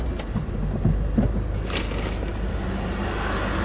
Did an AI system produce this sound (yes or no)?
no